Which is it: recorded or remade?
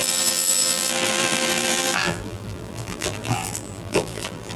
remade